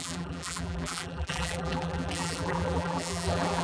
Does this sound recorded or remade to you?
remade